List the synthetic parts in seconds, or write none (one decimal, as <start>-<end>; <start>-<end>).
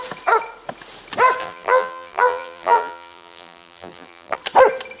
1.4-4.4